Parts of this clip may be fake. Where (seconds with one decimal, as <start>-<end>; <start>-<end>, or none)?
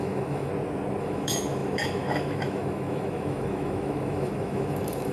0.0-0.5; 1.0-5.1